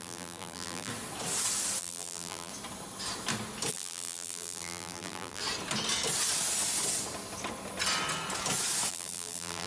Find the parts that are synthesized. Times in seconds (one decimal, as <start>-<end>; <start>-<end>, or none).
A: 0.0-0.9; 1.8-2.5; 3.7-5.4; 8.9-9.7